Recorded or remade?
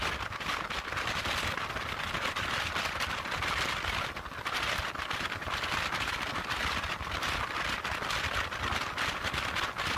recorded